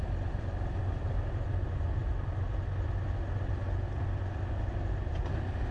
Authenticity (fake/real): real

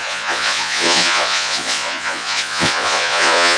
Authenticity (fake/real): fake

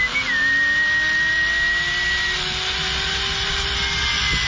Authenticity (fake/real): real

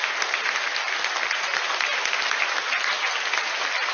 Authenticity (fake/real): real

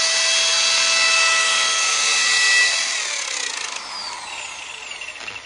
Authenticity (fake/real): real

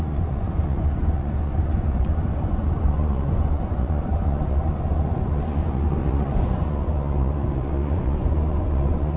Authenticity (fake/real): fake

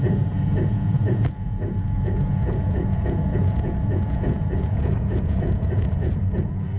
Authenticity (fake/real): fake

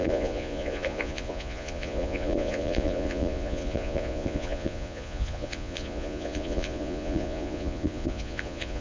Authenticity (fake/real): fake